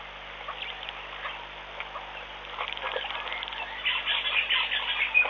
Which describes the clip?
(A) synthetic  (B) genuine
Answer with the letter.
B